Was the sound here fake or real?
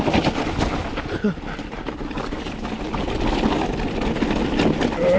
real